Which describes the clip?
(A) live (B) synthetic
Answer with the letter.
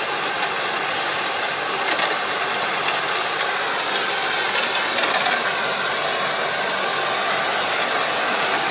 A